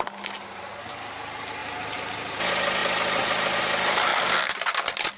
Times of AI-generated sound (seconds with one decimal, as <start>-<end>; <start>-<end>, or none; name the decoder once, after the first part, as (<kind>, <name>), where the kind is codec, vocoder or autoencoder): none